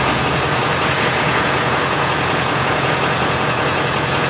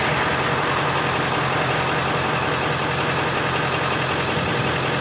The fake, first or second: first